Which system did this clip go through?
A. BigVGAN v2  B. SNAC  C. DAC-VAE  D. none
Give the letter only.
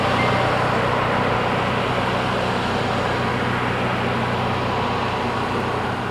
D